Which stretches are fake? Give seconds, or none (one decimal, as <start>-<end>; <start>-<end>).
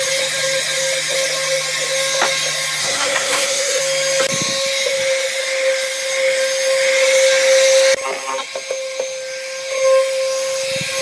2.8-3.8